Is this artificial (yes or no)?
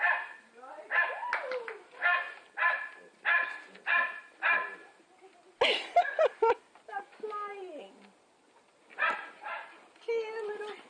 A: no